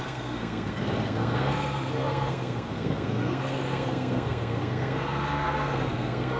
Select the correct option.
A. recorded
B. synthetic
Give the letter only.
B